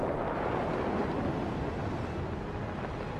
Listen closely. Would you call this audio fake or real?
real